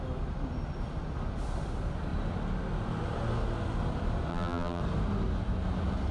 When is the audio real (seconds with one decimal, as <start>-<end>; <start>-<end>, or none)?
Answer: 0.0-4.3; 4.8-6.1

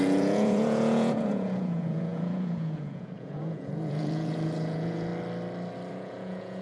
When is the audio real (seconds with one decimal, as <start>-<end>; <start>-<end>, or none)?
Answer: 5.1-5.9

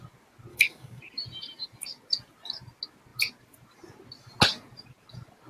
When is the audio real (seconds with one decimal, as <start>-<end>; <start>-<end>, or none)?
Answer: 0.0-0.5; 1.0-5.5